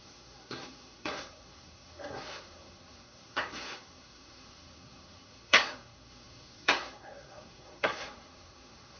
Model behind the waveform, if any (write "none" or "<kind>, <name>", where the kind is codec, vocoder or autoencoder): codec, SNAC